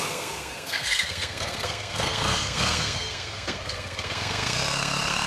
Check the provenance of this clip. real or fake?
fake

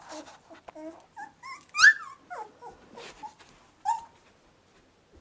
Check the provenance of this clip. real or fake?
real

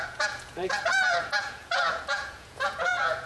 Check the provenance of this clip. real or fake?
fake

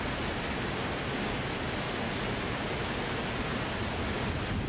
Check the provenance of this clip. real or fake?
real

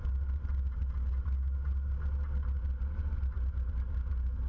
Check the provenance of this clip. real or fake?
real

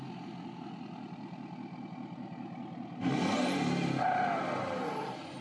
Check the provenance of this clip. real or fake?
real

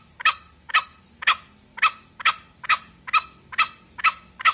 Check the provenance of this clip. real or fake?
real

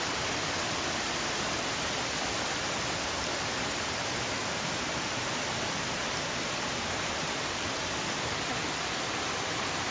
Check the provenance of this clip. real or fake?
fake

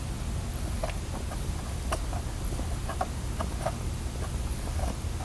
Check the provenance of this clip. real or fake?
real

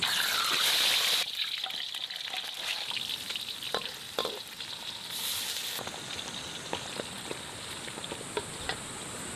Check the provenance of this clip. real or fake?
real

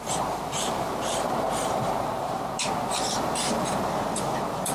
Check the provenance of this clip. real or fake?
fake